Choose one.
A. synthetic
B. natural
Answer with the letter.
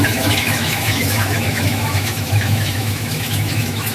A